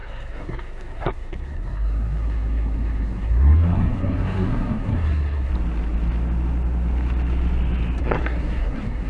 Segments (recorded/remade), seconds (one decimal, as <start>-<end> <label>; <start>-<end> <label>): 0.0-5.5 remade; 5.5-8.0 recorded; 8.0-9.1 remade